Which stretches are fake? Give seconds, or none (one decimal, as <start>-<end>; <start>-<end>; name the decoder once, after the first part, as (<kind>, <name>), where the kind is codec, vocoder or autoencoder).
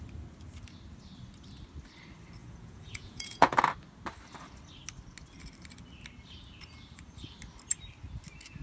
2.4-3.6 (vocoder, Vocos)